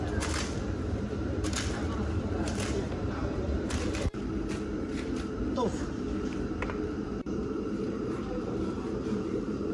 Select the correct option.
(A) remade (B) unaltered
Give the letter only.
A